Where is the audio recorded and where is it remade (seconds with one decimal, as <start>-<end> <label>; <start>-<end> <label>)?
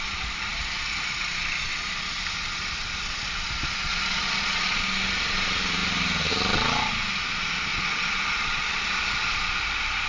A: 0.0-3.9 recorded; 3.9-4.8 remade; 4.8-7.7 recorded; 7.7-9.0 remade; 9.0-10.1 recorded